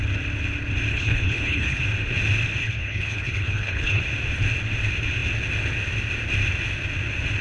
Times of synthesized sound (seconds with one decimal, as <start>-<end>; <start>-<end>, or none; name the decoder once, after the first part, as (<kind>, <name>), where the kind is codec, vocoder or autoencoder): 0.9-1.8 (codec, HILCodec); 2.6-4.0